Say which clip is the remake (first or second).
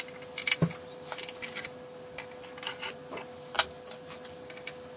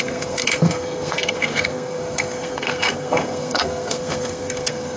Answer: second